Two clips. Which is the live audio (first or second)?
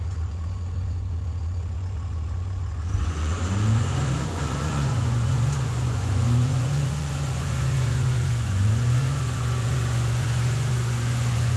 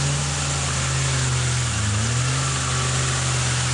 second